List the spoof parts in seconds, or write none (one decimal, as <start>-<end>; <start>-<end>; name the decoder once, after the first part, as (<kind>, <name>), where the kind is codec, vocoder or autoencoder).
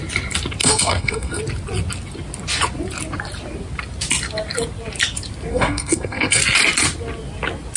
0.6-1.4 (codec, SNAC); 5.5-6.4